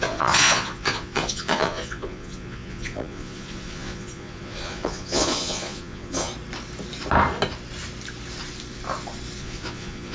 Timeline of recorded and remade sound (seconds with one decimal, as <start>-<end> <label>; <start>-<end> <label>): 0.0-6.3 remade; 6.3-9.4 recorded; 9.4-10.1 remade